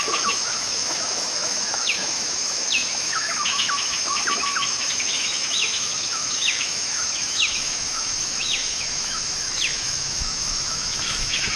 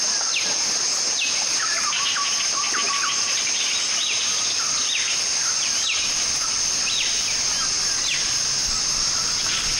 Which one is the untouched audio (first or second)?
second